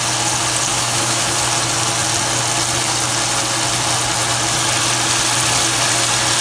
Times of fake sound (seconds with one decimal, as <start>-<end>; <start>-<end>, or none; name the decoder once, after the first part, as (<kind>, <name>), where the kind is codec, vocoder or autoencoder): 0.7-1.2 (autoencoder, DAC-VAE)